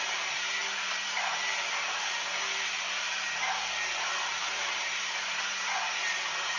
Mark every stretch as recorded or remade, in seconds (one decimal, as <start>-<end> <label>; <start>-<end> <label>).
0.0-6.6 recorded